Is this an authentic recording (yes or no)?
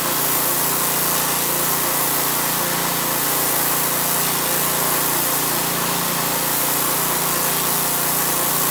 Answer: yes